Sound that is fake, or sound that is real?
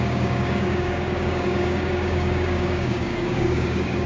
fake